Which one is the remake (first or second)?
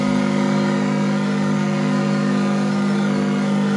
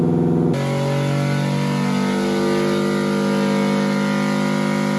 first